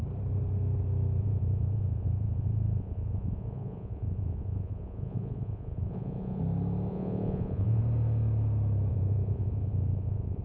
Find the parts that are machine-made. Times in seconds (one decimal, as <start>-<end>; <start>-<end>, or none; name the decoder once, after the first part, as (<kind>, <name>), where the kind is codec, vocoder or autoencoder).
1.2-6.4 (vocoder, Vocos); 6.9-7.8; 8.9-10.4

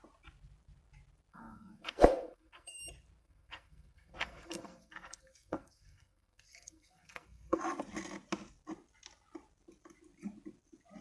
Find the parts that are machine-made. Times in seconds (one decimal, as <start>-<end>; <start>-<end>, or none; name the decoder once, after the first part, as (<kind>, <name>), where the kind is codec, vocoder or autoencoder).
1.3-2.8 (codec, SNAC); 3.2-7.6